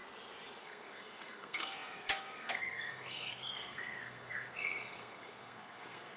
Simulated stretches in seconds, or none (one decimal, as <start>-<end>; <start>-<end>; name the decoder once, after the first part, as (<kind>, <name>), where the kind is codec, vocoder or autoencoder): 0.6-6.2 (codec, SNAC)